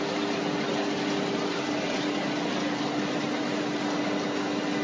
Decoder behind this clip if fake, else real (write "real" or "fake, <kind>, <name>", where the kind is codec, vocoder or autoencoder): real